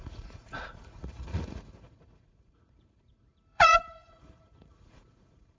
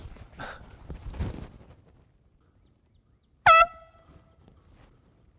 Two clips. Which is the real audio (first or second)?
second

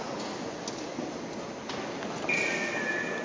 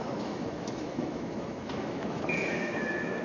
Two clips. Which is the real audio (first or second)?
first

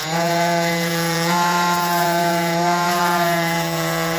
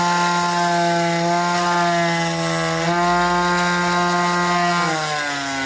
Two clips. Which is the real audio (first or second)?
second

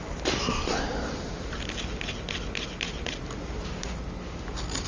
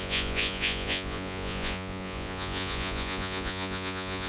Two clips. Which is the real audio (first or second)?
first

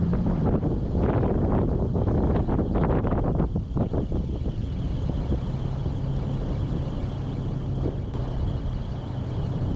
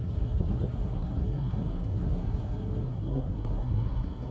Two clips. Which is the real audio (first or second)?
first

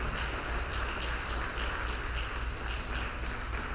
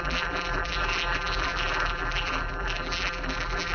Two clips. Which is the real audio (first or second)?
first